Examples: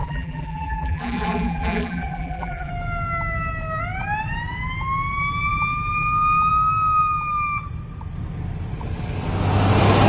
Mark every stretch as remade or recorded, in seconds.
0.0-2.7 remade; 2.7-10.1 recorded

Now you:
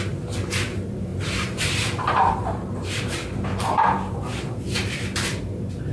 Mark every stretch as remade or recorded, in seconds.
0.0-5.9 remade